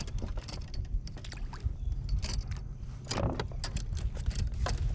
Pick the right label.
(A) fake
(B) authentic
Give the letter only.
B